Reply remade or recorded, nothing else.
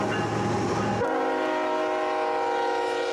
recorded